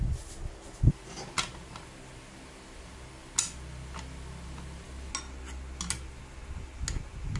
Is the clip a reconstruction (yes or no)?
no